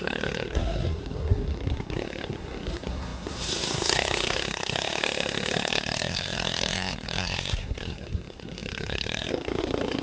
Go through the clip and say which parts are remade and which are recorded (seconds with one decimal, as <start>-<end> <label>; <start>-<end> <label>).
0.0-10.0 remade

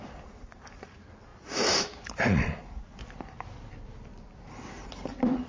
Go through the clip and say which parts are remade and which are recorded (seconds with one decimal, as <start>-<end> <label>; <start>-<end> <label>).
0.0-5.5 remade

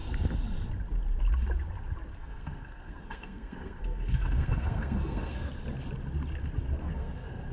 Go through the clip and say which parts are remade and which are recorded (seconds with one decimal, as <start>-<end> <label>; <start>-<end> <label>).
0.0-2.2 recorded; 2.2-5.5 remade; 5.5-6.8 recorded; 6.8-7.5 remade

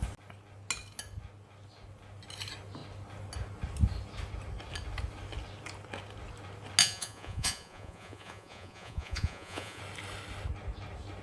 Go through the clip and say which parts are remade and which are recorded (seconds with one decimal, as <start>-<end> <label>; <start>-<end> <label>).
0.0-6.8 recorded; 6.8-9.8 remade; 9.8-11.2 recorded